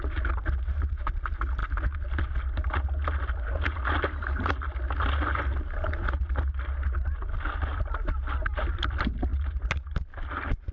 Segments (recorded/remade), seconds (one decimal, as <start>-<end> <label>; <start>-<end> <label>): 0.0-10.7 recorded